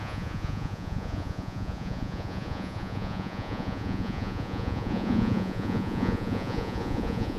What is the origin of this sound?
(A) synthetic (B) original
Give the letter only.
A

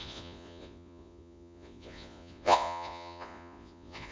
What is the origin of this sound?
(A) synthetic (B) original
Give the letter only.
A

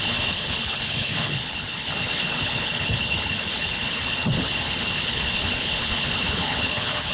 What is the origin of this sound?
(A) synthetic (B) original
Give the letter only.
A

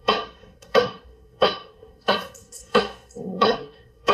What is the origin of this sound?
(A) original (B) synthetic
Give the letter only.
B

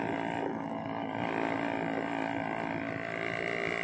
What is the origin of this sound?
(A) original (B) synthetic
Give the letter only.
A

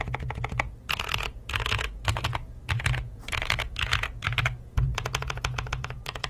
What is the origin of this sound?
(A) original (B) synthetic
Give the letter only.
B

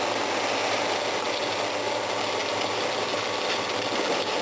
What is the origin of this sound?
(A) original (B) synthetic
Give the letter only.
A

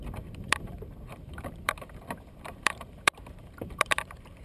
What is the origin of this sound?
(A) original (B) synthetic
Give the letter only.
B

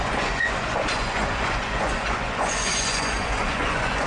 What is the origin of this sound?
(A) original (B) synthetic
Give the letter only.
B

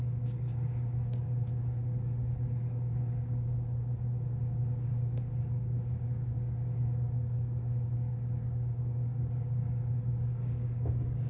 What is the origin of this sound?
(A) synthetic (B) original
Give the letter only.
A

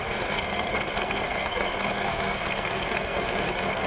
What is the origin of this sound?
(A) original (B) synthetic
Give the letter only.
B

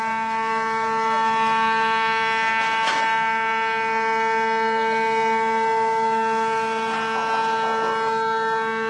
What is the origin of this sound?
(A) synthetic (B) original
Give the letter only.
B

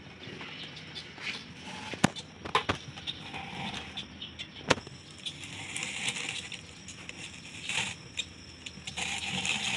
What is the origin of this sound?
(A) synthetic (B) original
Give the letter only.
B